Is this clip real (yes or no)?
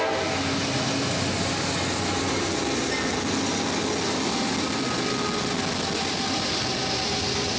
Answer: yes